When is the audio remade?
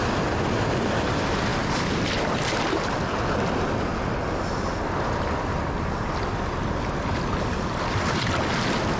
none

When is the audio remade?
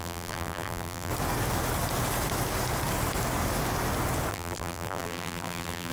0.0-1.1; 4.3-5.9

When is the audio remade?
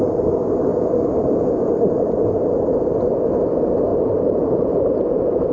0.7-3.1; 3.9-5.5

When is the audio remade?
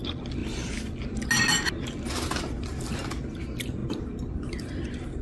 none